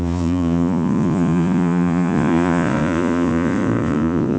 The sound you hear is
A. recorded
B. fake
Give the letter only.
B